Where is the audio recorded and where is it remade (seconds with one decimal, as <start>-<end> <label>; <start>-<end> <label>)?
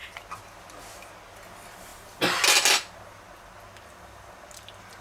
0.0-5.0 recorded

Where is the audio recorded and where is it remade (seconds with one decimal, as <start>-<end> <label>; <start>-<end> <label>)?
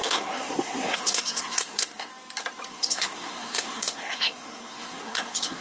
0.0-2.1 remade; 2.1-2.7 recorded; 2.7-5.6 remade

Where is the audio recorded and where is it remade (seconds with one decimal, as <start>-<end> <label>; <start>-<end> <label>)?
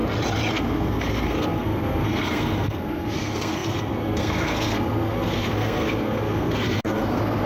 0.0-0.5 recorded; 0.5-7.5 remade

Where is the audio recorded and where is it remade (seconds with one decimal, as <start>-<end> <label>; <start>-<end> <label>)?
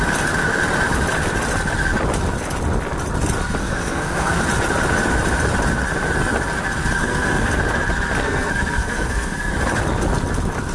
0.0-3.6 recorded; 3.6-4.4 remade; 4.4-7.0 recorded; 7.0-7.6 remade; 7.6-8.2 recorded; 8.2-9.5 remade; 9.5-10.7 recorded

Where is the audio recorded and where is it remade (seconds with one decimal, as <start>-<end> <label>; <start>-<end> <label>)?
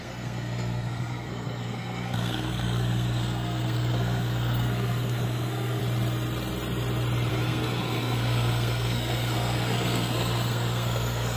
0.0-5.8 remade; 5.8-7.3 recorded; 7.3-11.4 remade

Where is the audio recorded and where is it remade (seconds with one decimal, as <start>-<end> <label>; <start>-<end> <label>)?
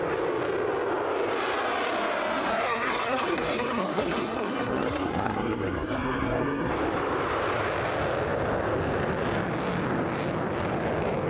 0.0-2.5 recorded; 2.5-6.7 remade; 6.7-11.3 recorded